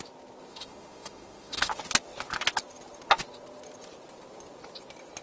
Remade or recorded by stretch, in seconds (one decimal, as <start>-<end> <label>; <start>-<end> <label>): 0.0-0.5 recorded; 0.5-1.7 remade; 1.7-5.2 recorded